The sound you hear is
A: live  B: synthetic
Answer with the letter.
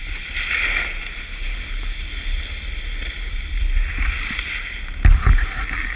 A